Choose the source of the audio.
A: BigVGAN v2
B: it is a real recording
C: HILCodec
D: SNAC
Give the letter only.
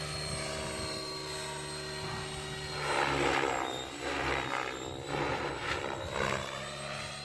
B